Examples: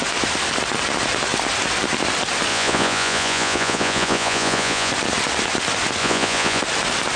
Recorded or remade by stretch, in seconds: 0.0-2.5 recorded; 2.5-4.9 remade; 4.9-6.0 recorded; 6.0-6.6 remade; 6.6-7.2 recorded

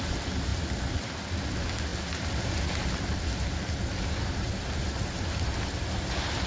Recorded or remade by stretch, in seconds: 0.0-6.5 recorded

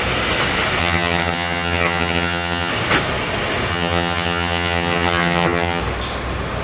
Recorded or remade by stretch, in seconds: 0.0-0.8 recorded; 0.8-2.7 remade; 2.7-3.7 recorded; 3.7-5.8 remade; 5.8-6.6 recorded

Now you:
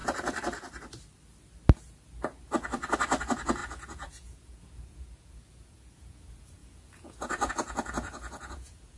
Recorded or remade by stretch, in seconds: 0.0-3.2 recorded; 3.2-9.0 remade

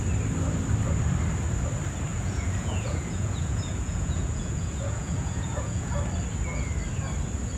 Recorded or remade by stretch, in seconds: 0.0-2.1 recorded; 2.1-5.9 remade; 5.9-7.6 recorded

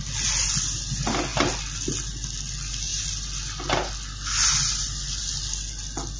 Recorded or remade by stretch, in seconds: 0.0-6.2 recorded